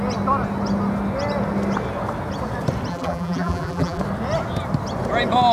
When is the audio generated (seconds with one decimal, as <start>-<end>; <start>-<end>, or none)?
2.9-4.0